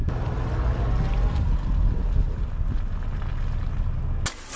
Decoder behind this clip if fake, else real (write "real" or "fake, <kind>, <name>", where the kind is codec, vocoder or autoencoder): real